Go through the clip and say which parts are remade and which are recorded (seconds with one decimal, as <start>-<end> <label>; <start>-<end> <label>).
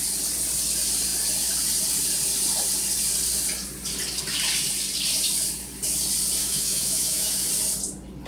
0.0-6.4 recorded; 6.4-7.5 remade; 7.5-8.3 recorded